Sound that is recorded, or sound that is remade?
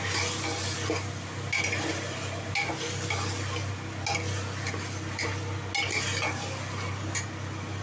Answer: recorded